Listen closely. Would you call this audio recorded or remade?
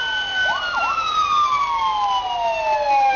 recorded